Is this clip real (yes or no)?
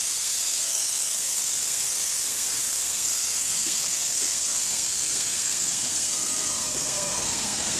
no